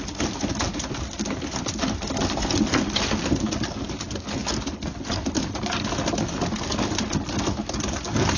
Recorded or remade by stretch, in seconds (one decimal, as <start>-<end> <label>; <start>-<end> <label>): 0.0-8.4 recorded